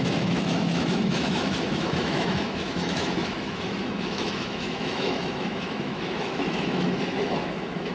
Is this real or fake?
fake